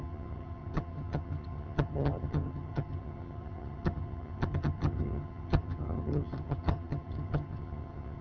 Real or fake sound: fake